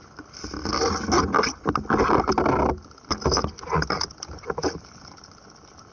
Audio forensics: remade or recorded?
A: recorded